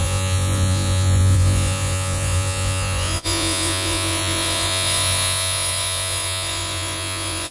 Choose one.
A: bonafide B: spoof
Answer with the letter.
B